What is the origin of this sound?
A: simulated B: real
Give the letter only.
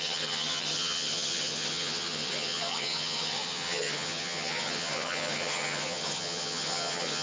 A